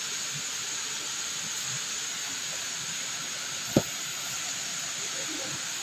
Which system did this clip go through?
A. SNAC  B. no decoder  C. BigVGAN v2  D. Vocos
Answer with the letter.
B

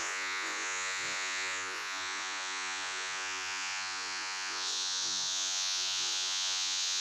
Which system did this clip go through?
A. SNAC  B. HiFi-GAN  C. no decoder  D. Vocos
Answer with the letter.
D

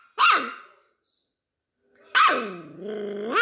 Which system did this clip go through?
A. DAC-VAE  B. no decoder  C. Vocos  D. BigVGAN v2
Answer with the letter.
B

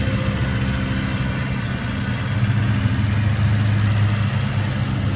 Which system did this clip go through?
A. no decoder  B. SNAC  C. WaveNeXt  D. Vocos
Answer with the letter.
A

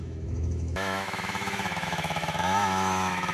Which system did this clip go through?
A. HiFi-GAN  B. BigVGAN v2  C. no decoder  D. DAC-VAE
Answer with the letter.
D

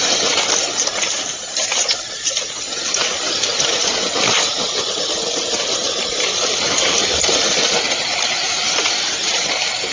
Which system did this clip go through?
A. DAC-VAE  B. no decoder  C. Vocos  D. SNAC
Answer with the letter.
B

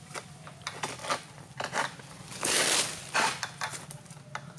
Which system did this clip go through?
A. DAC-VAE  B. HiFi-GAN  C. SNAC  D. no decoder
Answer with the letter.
D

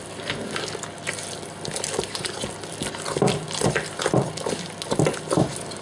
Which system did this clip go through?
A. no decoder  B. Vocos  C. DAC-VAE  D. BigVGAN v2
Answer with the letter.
A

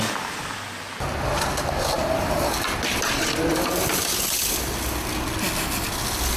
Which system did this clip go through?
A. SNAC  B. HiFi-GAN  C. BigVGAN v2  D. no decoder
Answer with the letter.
D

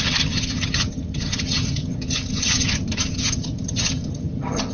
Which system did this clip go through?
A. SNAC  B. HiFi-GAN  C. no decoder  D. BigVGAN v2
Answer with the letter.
B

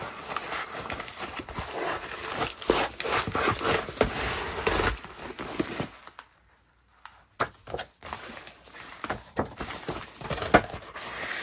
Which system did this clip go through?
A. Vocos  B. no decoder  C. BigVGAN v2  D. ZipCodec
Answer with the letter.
B